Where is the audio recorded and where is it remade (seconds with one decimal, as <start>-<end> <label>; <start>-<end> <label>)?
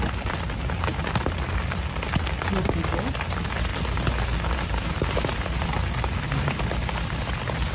0.0-7.7 recorded